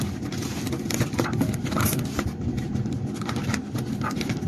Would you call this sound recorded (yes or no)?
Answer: no